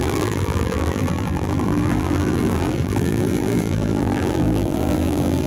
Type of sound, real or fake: fake